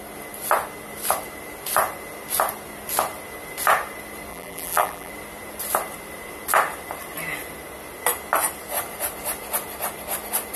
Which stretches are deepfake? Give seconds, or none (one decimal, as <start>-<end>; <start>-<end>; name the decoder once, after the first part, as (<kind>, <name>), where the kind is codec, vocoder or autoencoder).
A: 4.3-5.1 (vocoder, BigVGAN v2)